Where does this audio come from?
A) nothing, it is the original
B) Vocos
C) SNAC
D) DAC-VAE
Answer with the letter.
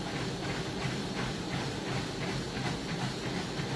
A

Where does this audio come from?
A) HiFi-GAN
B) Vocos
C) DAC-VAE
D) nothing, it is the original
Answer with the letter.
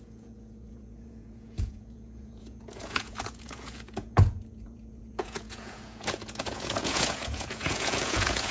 B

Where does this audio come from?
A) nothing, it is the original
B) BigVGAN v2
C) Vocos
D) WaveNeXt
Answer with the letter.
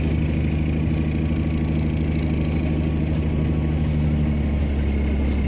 A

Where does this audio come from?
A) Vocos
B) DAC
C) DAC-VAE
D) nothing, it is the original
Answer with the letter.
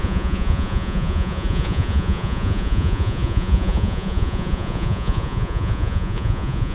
A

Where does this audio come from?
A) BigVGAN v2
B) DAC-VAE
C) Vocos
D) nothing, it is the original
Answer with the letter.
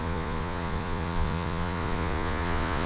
C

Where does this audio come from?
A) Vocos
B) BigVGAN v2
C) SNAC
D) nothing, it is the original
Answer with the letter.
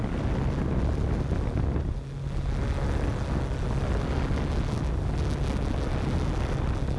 D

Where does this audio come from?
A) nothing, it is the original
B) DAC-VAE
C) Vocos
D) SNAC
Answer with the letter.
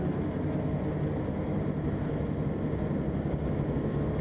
A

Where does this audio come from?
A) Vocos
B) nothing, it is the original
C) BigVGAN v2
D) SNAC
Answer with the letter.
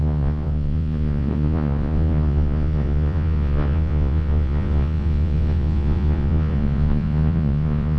A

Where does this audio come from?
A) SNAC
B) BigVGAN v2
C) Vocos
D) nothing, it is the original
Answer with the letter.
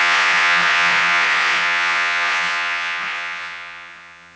C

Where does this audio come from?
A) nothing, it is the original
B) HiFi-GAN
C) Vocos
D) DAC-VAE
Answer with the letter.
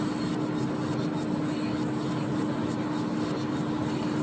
A